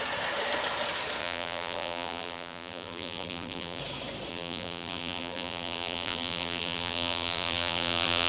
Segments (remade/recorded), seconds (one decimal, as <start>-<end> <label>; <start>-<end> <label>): 0.0-1.2 recorded; 1.2-3.8 remade; 3.8-4.3 recorded; 4.3-8.3 remade